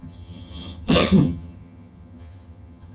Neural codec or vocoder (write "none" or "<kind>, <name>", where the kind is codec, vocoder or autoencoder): vocoder, HiFi-GAN